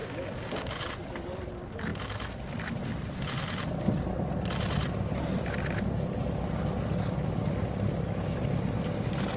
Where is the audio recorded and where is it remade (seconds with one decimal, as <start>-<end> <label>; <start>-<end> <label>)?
0.0-0.9 remade; 0.9-9.4 recorded